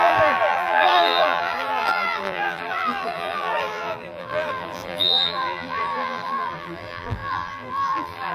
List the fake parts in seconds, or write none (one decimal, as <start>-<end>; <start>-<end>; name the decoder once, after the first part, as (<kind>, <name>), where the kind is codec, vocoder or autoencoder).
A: 0.0-8.3 (vocoder, BigVGAN v2)